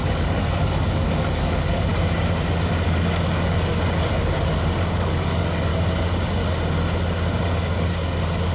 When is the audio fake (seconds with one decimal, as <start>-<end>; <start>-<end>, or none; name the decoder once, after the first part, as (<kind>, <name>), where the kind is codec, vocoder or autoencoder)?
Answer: 0.0-1.9 (codec, DAC); 2.7-3.7; 4.5-5.7; 7.4-8.5